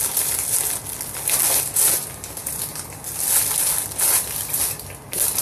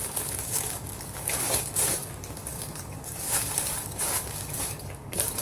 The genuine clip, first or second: first